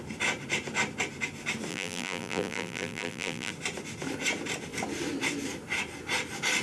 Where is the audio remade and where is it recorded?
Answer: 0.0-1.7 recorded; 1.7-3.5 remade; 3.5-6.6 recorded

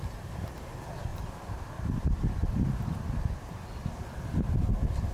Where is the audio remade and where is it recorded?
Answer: 0.0-1.1 recorded; 1.1-4.2 remade; 4.2-5.1 recorded

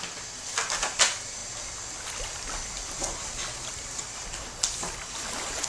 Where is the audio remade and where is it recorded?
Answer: 0.0-5.7 recorded

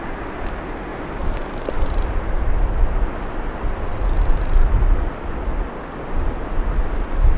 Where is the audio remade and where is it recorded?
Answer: 0.0-0.9 recorded; 0.9-2.3 remade; 2.3-3.9 recorded; 3.9-4.7 remade; 4.7-7.4 recorded

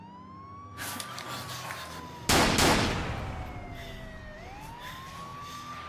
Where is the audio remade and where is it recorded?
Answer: 0.0-5.9 recorded

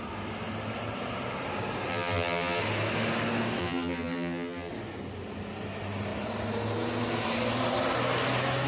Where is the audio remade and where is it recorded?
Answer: 0.0-1.9 recorded; 1.9-2.6 remade; 2.6-3.6 recorded; 3.6-4.7 remade; 4.7-8.7 recorded

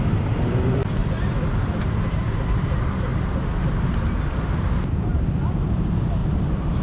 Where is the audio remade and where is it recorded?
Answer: 0.0-1.0 remade; 1.0-1.8 recorded; 1.8-6.8 remade